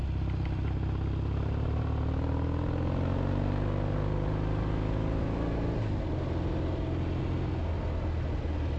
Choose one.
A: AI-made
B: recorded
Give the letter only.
B